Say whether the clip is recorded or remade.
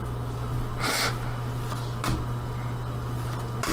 recorded